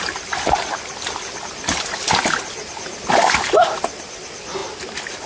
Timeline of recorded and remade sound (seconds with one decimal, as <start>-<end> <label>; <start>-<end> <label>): 0.0-5.3 recorded